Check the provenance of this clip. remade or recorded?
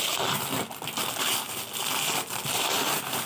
recorded